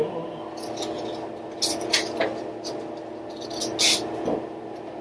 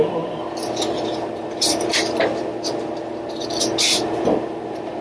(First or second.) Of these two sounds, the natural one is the first